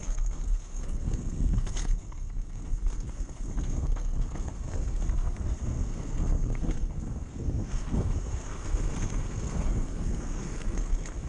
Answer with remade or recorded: remade